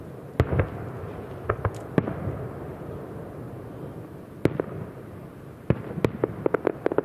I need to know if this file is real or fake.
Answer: real